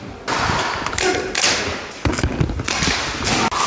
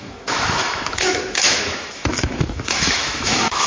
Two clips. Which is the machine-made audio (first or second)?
second